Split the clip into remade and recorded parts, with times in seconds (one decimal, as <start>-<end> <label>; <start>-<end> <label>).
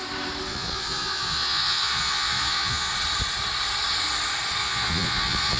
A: 0.0-0.5 recorded; 0.5-2.9 remade; 2.9-4.6 recorded; 4.6-5.6 remade